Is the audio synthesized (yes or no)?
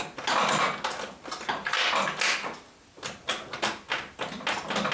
no